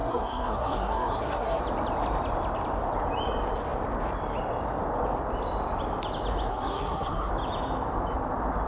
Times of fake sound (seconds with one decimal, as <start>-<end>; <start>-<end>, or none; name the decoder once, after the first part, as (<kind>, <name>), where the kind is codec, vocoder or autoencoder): 0.0-1.6 (codec, SNAC); 6.5-7.3